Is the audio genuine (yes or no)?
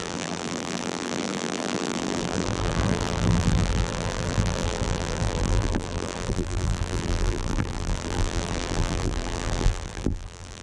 no